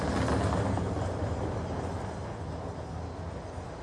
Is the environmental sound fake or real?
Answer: real